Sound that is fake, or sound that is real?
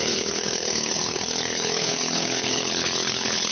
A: fake